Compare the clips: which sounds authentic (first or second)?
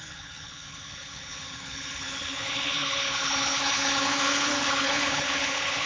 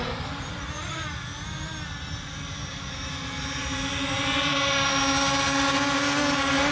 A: second